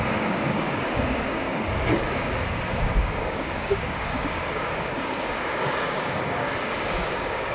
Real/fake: fake